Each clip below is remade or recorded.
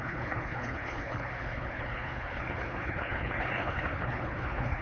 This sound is remade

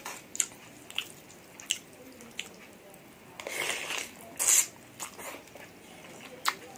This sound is recorded